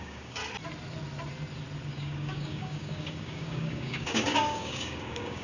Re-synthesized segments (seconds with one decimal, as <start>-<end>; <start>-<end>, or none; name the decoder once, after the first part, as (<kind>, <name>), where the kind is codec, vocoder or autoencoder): 0.0-0.4 (codec, DAC); 1.9-5.4